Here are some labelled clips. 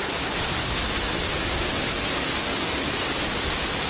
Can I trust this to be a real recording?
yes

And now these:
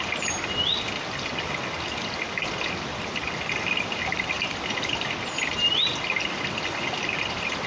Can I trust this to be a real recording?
no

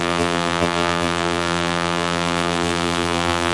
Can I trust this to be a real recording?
no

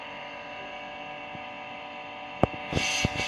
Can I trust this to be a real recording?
yes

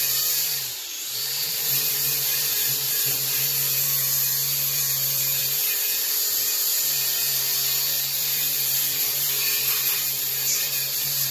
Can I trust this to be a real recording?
no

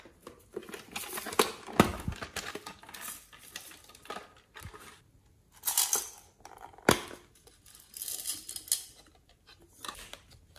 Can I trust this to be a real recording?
yes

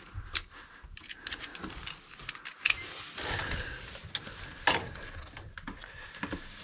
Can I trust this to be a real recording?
yes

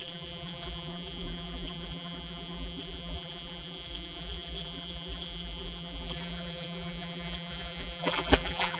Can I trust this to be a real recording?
no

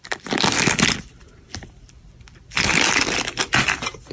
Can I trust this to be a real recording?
no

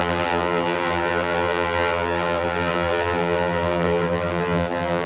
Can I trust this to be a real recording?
no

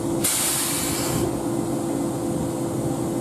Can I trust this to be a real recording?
yes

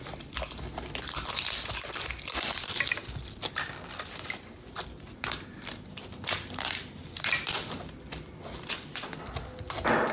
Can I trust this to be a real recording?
yes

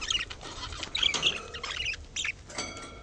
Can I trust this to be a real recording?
yes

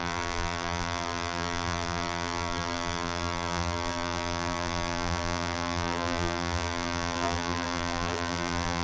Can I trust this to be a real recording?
no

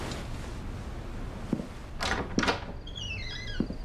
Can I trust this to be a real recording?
yes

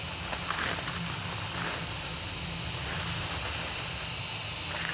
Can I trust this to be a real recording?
no